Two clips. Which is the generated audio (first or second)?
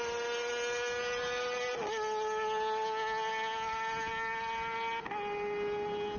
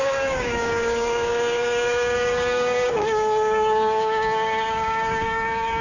second